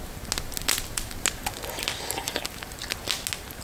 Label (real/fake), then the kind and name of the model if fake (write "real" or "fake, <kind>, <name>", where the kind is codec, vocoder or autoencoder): real